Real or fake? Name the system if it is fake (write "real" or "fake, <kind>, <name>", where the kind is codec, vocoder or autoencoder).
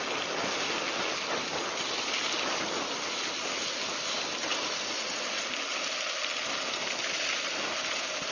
real